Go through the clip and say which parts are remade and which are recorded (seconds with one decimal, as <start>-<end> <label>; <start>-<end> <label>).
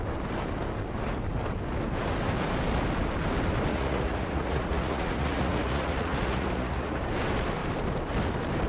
0.0-3.7 recorded; 3.7-7.0 remade; 7.0-8.7 recorded